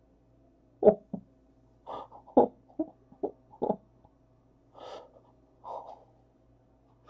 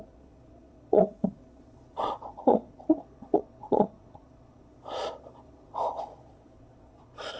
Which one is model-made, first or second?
second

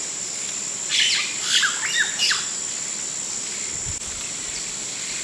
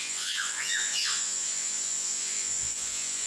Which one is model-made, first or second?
second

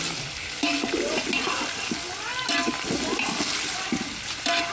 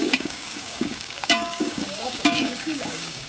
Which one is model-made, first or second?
second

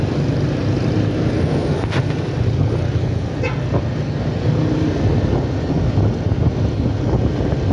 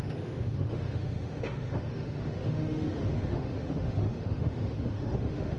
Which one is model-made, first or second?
second